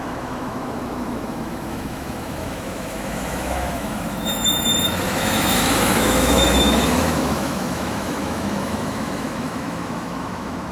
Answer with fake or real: fake